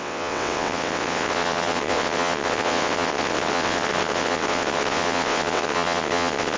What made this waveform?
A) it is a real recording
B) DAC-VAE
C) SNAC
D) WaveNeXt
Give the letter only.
D